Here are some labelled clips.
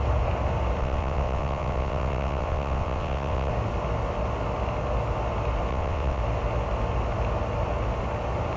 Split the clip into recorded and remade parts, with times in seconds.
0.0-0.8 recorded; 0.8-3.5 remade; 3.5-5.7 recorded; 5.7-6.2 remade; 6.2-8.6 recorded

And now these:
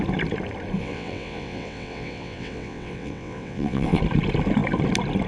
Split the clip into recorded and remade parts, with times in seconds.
0.0-0.8 recorded; 0.8-4.0 remade; 4.0-5.3 recorded

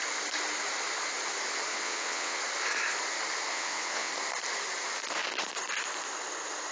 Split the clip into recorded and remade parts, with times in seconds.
0.0-1.7 recorded; 1.7-2.4 remade; 2.4-3.5 recorded; 3.5-4.1 remade; 4.1-6.7 recorded

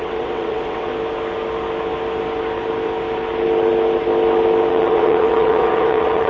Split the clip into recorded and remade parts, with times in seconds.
0.0-0.9 remade; 0.9-4.7 recorded; 4.7-6.3 remade

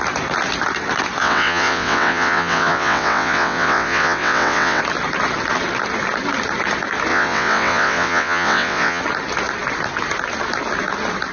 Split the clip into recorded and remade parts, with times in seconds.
0.0-1.2 recorded; 1.2-4.8 remade; 4.8-7.1 recorded; 7.1-9.0 remade; 9.0-11.3 recorded